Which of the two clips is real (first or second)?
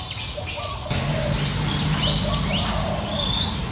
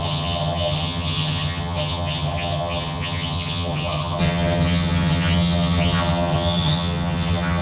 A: first